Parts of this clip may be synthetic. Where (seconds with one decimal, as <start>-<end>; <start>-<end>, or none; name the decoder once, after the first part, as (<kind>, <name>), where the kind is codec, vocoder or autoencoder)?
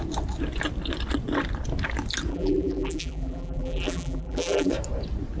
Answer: 2.3-4.7 (vocoder, BigVGAN v2)